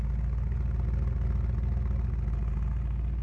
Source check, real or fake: real